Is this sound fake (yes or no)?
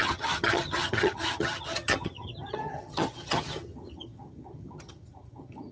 yes